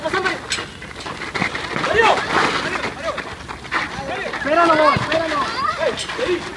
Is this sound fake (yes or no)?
no